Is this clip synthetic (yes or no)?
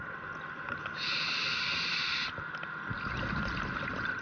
no